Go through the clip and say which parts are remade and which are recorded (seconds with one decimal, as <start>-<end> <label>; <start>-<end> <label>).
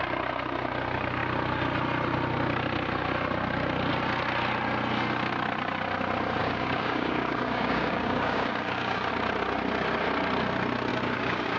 0.0-6.4 recorded; 6.4-9.1 remade; 9.1-10.9 recorded; 10.9-11.6 remade